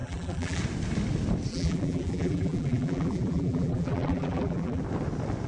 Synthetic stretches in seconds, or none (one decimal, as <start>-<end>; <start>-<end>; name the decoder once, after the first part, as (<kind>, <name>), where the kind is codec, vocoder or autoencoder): 0.0-0.6 (vocoder, BigVGAN v2); 1.5-4.8